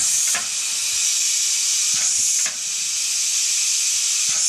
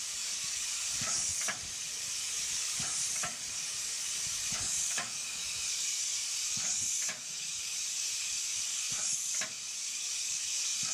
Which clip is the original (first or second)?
first